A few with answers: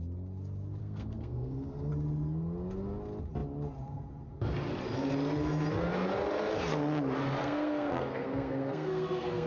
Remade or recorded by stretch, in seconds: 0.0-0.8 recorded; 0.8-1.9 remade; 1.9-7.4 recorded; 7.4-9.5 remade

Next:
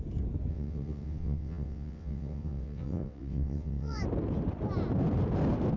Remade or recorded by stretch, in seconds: 0.0-0.5 recorded; 0.5-4.0 remade; 4.0-5.8 recorded

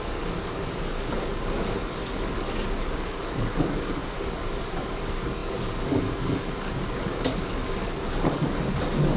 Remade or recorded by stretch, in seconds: 0.0-9.2 remade